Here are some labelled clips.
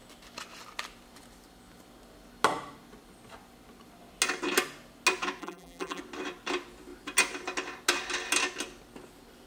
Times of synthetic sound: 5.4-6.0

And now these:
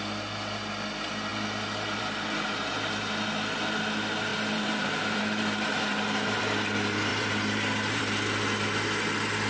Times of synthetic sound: 4.3-6.4; 7.1-8.0

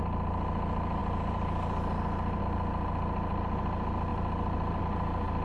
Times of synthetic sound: none